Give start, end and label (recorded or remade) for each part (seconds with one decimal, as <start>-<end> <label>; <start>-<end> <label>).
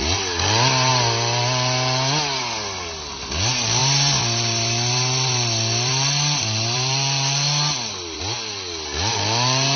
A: 0.0-3.8 recorded; 3.8-8.2 remade; 8.2-9.8 recorded